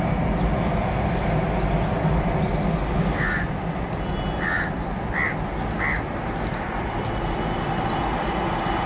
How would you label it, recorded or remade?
recorded